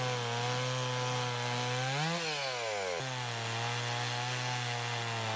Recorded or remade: recorded